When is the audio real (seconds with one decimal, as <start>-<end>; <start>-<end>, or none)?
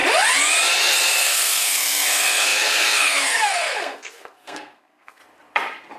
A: 0.0-1.2; 5.2-6.0